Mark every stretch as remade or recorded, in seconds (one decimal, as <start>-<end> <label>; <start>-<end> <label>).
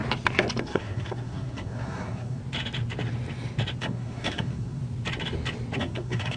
0.0-0.6 recorded; 0.6-2.4 remade; 2.4-3.8 recorded; 3.8-4.8 remade; 4.8-5.8 recorded; 5.8-6.4 remade